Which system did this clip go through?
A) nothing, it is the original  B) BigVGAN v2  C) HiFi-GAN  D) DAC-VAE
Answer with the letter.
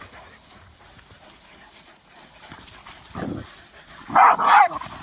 A